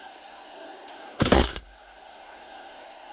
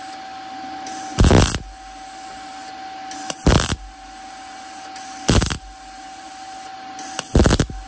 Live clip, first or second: second